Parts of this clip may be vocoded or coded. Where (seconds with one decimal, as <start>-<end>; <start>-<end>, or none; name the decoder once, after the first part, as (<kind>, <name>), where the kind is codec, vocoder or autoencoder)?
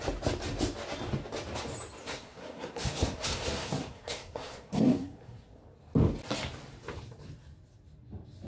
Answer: 2.0-5.6 (codec, SNAC)